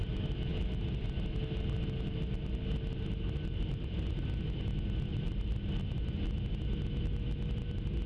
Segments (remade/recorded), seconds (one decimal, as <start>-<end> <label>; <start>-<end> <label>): 0.0-5.1 recorded; 5.1-6.1 remade; 6.1-8.1 recorded